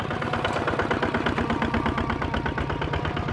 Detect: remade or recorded recorded